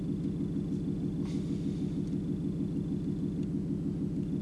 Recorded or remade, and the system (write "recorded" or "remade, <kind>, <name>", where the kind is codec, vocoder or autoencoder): recorded